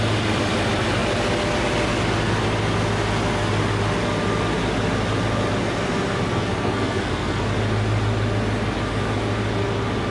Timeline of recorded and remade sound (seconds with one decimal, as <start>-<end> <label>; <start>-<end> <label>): 0.0-6.3 recorded; 6.3-7.4 remade; 7.4-10.1 recorded